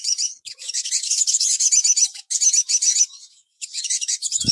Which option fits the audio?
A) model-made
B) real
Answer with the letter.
A